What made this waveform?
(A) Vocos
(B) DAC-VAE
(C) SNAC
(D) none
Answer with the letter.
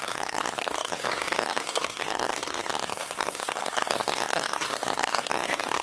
C